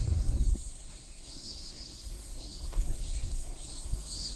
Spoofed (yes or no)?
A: yes